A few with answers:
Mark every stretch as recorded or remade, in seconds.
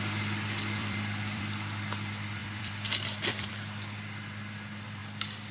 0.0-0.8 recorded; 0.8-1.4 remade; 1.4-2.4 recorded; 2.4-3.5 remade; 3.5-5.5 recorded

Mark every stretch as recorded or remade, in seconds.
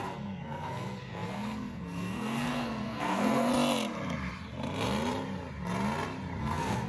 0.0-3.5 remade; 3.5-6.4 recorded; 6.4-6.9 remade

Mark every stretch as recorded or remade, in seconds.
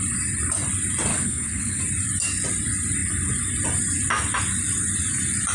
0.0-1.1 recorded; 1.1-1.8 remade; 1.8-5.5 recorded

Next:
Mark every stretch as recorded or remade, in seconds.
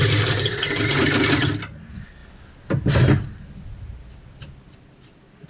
0.0-5.5 recorded